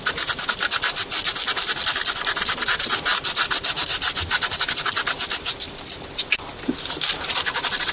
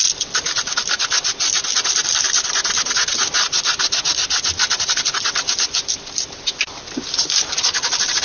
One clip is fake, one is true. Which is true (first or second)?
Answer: first